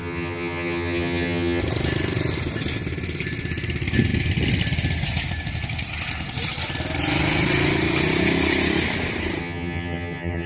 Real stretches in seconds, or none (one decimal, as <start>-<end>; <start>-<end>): 1.6-9.4